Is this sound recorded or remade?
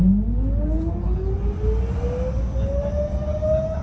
recorded